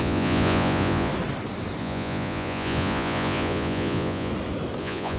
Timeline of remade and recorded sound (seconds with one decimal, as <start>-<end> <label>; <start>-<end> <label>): 0.0-1.1 remade; 1.1-1.8 recorded; 1.8-4.3 remade; 4.3-4.8 recorded; 4.8-5.2 remade